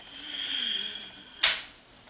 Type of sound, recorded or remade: recorded